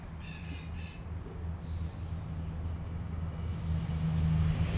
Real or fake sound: real